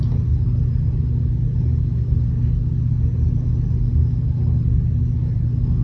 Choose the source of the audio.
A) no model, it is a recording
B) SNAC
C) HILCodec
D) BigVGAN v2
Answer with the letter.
A